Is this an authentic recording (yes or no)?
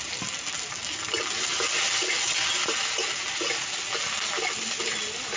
yes